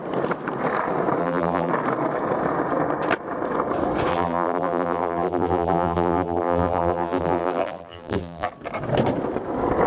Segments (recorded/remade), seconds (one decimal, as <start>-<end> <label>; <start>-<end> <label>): 0.0-1.2 recorded; 1.2-1.7 remade; 1.7-4.1 recorded; 4.1-8.5 remade; 8.5-9.9 recorded